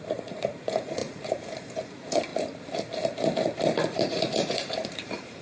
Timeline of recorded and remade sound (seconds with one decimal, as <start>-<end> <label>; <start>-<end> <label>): 0.0-2.3 remade; 2.3-3.8 recorded; 3.8-5.4 remade